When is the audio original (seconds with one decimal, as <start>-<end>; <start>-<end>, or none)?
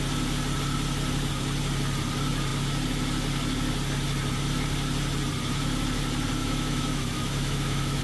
0.0-6.4